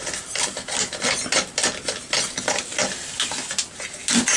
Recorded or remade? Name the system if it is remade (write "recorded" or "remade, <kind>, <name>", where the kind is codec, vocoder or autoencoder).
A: recorded